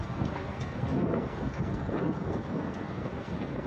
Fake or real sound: fake